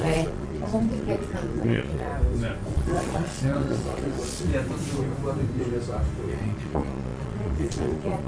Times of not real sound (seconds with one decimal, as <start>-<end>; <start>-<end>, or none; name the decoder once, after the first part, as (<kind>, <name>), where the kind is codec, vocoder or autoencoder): 0.0-2.1 (vocoder, Vocos); 2.7-4.5; 6.3-8.3